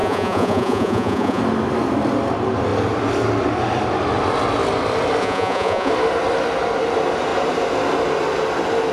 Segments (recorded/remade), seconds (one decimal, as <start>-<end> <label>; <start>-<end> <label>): 0.0-1.4 remade; 1.4-5.2 recorded; 5.2-5.9 remade; 5.9-8.9 recorded